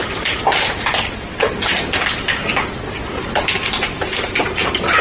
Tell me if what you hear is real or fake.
real